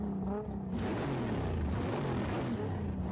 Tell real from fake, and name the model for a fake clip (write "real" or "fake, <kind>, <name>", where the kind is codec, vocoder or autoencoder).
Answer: real